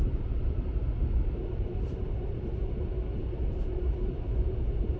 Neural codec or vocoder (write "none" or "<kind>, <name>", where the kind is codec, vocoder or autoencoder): vocoder, BigVGAN v2